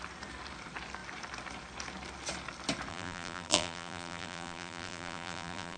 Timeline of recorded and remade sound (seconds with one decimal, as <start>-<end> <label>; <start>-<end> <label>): 0.0-2.9 recorded; 2.9-5.8 remade